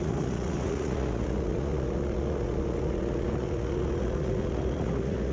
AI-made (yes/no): yes